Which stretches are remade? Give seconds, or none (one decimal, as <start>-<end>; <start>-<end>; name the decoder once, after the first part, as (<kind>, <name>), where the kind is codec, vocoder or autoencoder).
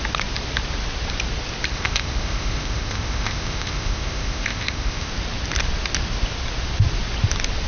1.7-5.1 (codec, ZipCodec)